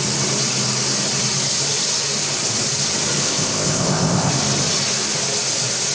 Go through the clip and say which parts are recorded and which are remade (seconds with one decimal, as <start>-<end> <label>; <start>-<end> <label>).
0.0-3.2 recorded; 3.2-4.3 remade; 4.3-5.9 recorded